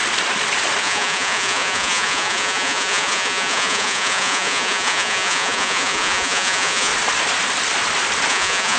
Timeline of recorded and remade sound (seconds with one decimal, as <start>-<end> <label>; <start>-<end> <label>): 0.0-0.8 recorded; 0.8-6.9 remade; 6.9-8.3 recorded; 8.3-8.8 remade